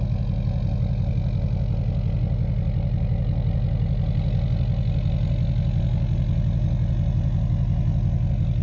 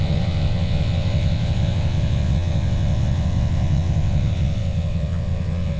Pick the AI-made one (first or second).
second